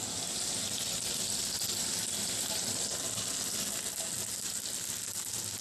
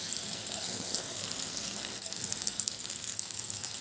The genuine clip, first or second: first